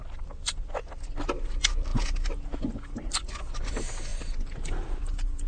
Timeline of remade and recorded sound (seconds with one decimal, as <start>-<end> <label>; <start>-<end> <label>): 0.0-5.5 recorded